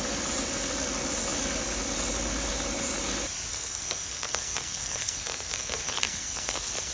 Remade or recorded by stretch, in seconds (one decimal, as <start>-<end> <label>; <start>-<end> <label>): 0.0-3.5 recorded; 3.5-6.9 remade